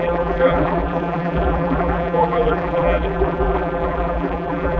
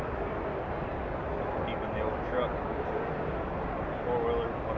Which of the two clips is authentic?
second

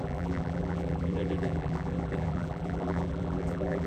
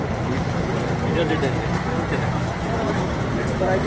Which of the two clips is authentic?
second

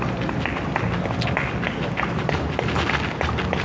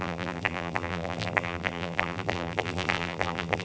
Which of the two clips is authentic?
first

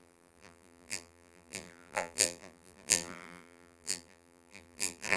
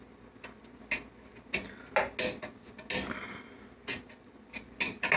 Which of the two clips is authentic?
second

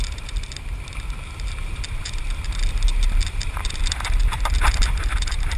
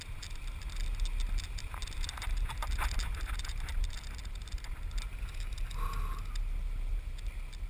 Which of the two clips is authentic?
second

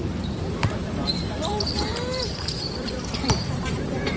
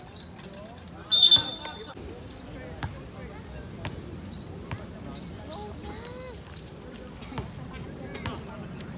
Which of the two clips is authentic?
second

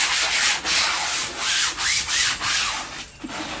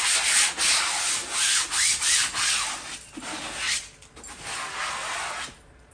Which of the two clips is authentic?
second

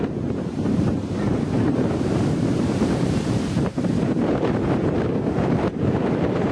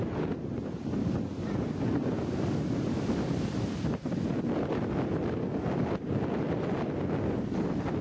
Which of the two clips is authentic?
second